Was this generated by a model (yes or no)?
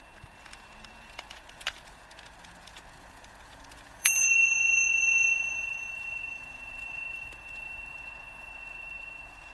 yes